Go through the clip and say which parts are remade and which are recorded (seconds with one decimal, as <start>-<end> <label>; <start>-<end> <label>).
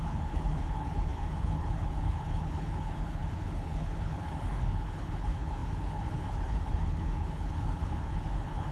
0.0-8.7 remade